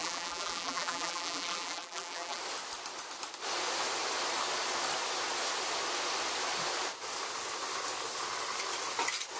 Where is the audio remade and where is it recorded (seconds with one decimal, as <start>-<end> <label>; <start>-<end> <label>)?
0.0-2.4 remade; 2.4-9.4 recorded